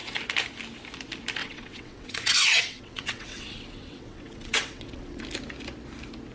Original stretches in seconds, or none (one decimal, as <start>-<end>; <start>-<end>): 0.0-1.4; 5.2-6.3